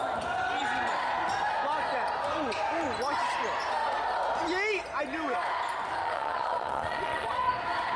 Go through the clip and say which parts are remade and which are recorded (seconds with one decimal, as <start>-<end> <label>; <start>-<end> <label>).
0.0-6.0 recorded; 6.0-7.5 remade; 7.5-8.0 recorded